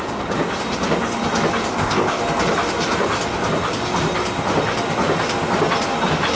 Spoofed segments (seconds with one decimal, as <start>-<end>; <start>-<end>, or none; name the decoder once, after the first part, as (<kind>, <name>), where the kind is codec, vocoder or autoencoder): 1.7-2.2 (codec, ZipCodec)